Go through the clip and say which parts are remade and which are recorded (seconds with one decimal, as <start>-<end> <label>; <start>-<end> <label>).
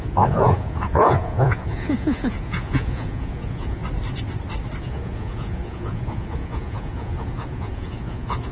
0.0-3.8 remade; 3.8-4.8 recorded; 4.8-8.5 remade